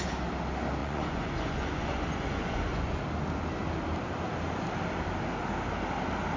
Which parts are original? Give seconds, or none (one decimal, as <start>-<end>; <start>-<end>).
0.0-0.8; 3.0-6.4